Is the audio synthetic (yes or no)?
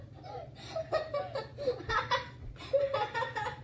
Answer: no